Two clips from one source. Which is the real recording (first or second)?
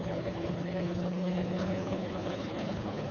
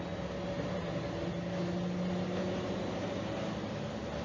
second